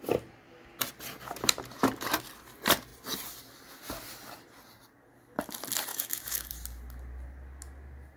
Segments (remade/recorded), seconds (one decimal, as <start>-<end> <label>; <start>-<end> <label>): 0.0-5.9 recorded; 5.9-6.5 remade; 6.5-8.2 recorded